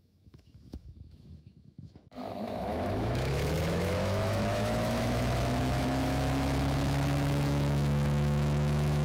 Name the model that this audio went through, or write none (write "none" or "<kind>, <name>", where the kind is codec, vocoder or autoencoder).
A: autoencoder, DAC-VAE